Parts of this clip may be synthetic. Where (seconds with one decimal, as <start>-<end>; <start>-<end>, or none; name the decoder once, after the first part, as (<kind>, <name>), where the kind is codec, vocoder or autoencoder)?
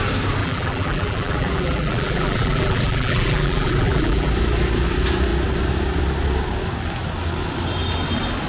0.4-4.3 (vocoder, BigVGAN v2)